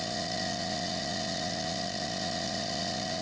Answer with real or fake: fake